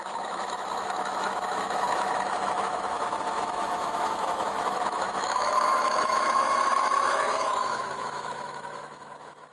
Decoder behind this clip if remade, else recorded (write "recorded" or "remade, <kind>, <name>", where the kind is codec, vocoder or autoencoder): remade, autoencoder, DAC-VAE